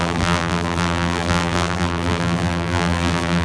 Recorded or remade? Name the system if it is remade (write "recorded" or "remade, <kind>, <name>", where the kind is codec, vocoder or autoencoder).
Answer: remade, vocoder, BigVGAN v2